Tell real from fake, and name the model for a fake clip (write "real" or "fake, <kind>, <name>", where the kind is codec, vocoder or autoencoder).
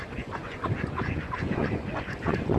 fake, vocoder, Vocos